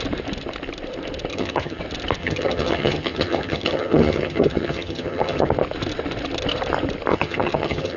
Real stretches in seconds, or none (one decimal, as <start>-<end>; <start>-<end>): 0.0-1.3; 1.8-2.2; 5.5-7.1